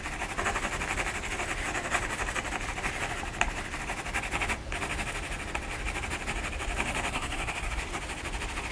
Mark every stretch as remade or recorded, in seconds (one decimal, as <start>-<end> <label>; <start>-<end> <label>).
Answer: 0.0-7.1 recorded; 7.1-8.0 remade; 8.0-8.7 recorded